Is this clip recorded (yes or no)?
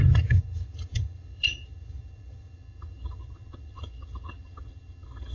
no